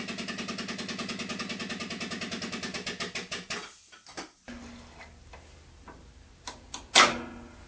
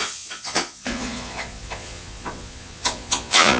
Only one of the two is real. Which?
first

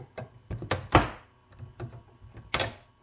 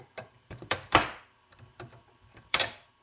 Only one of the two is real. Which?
first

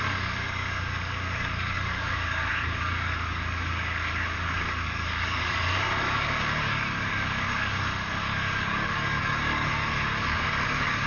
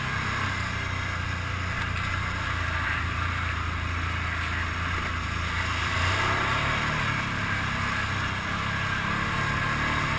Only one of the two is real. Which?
second